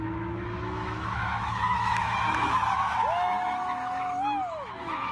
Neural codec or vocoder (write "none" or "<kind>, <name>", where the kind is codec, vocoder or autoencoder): autoencoder, DAC-VAE